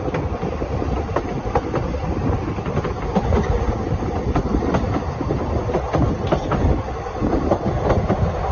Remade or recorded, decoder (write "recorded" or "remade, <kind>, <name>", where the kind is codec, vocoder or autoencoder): recorded